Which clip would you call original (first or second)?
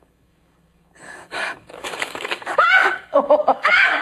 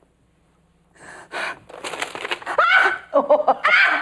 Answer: second